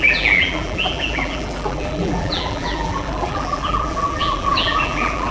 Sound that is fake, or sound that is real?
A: fake